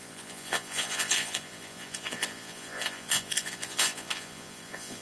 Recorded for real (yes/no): no